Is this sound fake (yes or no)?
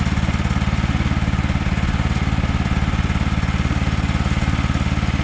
no